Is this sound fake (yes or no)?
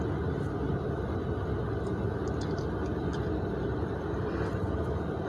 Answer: no